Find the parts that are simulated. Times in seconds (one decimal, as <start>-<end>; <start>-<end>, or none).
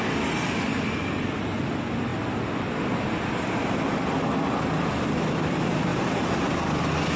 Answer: none